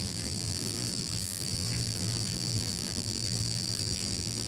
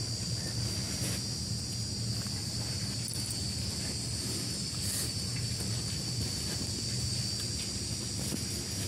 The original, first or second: second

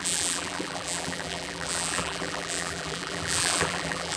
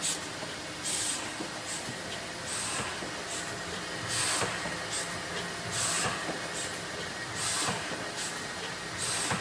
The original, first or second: second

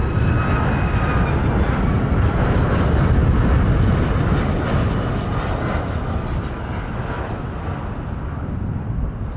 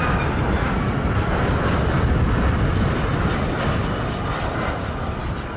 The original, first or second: first